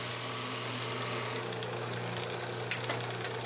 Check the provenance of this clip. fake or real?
real